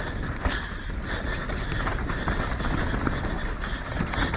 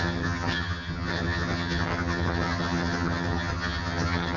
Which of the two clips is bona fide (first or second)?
first